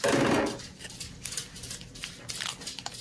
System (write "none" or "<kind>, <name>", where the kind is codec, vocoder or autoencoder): none